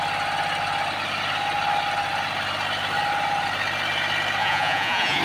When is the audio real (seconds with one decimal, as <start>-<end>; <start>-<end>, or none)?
0.0-4.4